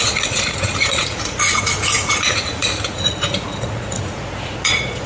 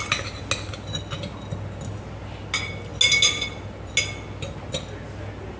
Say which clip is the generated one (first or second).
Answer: first